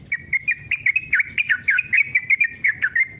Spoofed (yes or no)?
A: no